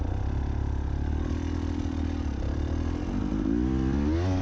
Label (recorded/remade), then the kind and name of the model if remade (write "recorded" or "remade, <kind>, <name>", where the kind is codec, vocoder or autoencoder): recorded